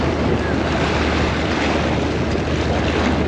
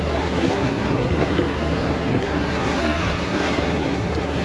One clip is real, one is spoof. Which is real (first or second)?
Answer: first